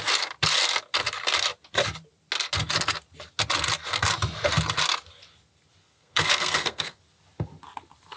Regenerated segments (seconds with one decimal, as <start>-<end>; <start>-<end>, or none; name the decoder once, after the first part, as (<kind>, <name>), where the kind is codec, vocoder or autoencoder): 5.8-7.0 (codec, SNAC)